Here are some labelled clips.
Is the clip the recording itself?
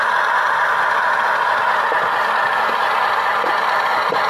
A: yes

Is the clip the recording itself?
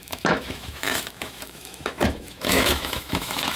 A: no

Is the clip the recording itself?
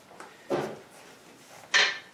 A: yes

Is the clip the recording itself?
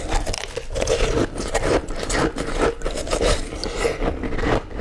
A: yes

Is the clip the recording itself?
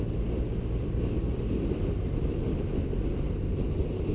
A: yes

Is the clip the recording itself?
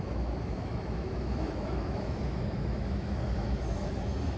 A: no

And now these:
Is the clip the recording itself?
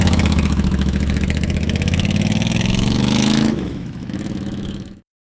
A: no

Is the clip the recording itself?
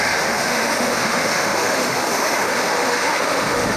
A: no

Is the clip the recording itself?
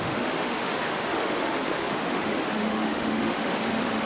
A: no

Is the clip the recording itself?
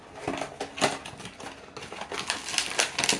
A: yes